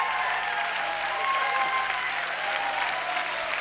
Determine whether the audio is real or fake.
real